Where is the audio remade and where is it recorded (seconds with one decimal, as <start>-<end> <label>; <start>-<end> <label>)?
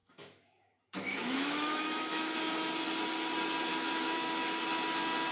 0.0-2.3 remade; 2.3-3.7 recorded; 3.7-4.6 remade; 4.6-5.3 recorded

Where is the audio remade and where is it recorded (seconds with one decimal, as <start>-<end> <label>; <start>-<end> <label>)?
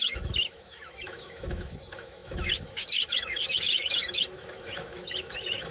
0.0-5.7 remade